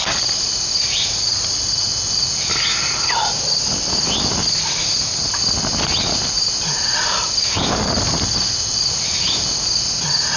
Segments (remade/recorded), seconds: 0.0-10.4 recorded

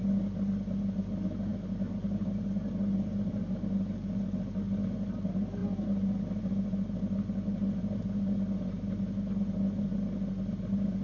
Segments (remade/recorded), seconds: 0.0-11.0 recorded

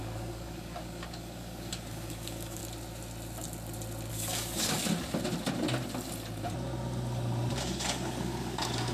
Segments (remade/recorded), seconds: 0.0-2.6 remade; 2.6-4.1 recorded; 4.1-4.8 remade; 4.8-7.5 recorded; 7.5-8.9 remade